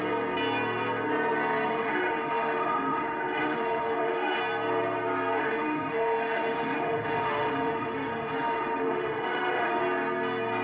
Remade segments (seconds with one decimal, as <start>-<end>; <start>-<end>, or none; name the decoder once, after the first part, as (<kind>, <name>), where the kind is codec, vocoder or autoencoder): 1.7-4.4 (autoencoder, DAC-VAE); 5.4-9.8